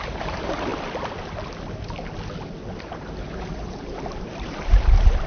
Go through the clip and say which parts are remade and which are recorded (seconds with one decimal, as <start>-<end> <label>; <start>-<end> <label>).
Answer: 0.0-0.7 remade; 0.7-2.7 recorded; 2.7-5.3 remade

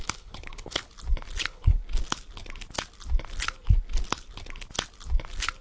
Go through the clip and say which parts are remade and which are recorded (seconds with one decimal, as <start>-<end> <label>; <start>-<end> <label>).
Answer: 0.0-0.9 remade; 0.9-1.4 recorded; 1.4-1.8 remade; 1.8-5.6 recorded

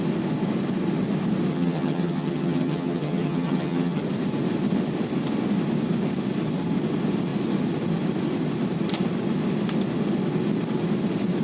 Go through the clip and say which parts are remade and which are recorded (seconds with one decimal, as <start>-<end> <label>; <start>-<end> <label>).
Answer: 0.0-1.5 recorded; 1.5-4.0 remade; 4.0-11.4 recorded

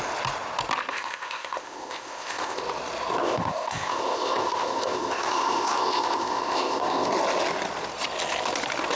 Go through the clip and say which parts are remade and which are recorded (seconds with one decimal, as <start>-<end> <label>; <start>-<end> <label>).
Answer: 0.0-0.9 recorded; 0.9-2.6 remade; 2.6-3.2 recorded; 3.2-7.1 remade; 7.1-8.9 recorded